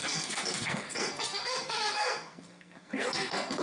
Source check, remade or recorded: remade